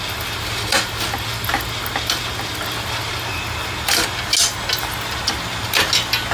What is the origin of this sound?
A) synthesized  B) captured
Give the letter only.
B